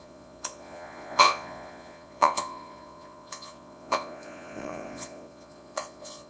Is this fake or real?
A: fake